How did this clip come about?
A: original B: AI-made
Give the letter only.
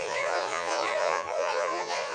B